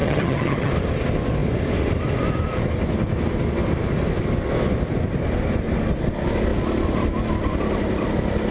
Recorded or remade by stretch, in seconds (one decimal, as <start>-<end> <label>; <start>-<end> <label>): 0.0-0.7 remade; 0.7-8.5 recorded